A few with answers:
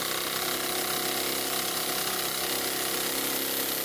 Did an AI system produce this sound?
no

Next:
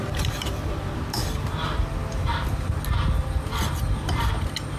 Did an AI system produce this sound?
no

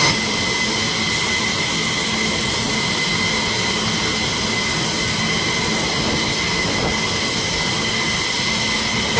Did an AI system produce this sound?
no